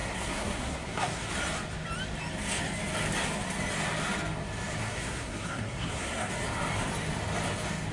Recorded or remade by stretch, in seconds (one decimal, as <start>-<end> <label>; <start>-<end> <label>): 0.0-1.3 remade; 1.3-4.8 recorded; 4.8-6.3 remade; 6.3-7.9 recorded